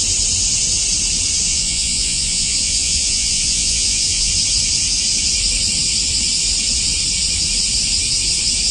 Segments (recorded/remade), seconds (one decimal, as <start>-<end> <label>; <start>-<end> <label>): 0.0-1.5 recorded; 1.5-4.3 remade; 4.3-8.7 recorded